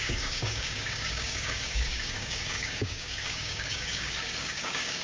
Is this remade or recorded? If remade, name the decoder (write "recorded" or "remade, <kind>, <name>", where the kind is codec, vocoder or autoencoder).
remade, codec, DAC